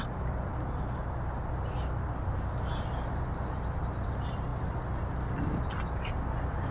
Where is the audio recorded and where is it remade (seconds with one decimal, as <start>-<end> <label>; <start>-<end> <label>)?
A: 0.0-6.7 recorded